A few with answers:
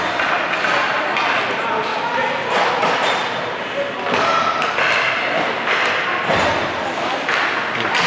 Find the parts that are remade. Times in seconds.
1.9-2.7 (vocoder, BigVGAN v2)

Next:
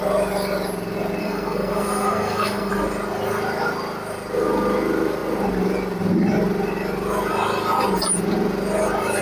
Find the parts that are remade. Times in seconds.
1.2-2.7 (codec, SNAC)

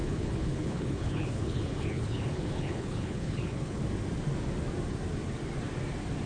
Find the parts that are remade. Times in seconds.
0.0-3.8 (codec, HILCodec)